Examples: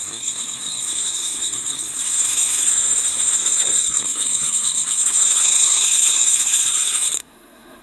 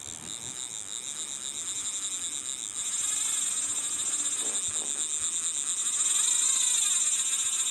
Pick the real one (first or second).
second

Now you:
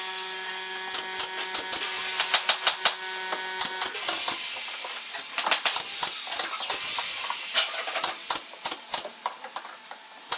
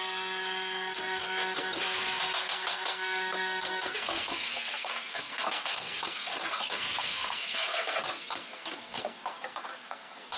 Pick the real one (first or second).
first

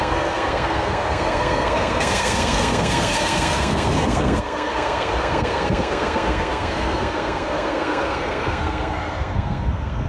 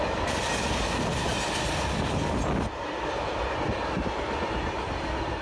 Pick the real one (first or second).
second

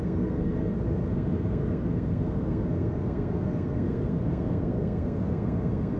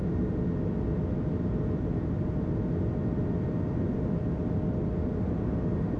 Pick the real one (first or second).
second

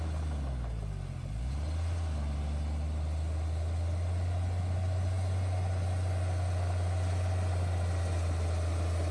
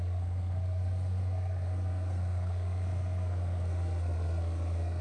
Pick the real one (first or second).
first